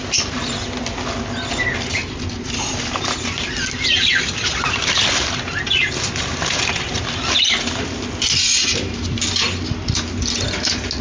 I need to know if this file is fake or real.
real